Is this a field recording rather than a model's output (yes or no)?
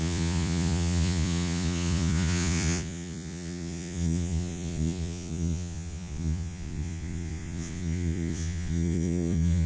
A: no